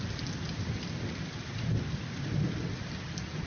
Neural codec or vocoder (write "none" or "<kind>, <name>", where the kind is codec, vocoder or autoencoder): none